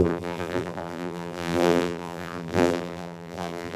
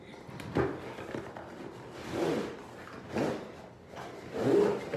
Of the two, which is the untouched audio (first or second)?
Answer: second